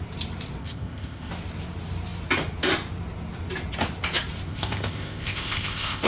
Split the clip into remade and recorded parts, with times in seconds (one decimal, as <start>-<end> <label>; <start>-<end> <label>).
0.0-0.6 recorded; 0.6-1.3 remade; 1.3-4.5 recorded; 4.5-6.1 remade